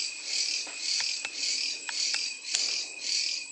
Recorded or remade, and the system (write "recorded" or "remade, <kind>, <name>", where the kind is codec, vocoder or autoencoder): recorded